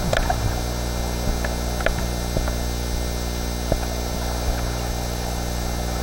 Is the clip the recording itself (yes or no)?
yes